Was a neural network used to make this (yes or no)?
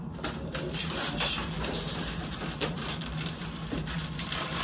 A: yes